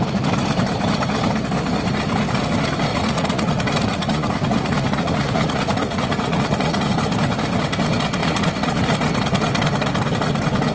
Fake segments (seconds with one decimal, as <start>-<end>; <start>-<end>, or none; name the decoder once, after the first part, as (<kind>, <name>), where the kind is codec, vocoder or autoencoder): 2.9-6.9 (vocoder, Vocos); 8.2-8.9